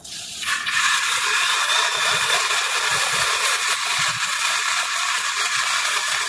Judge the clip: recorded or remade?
remade